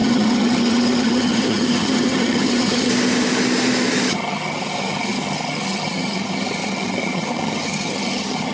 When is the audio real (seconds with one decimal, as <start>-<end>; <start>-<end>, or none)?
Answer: 2.9-4.1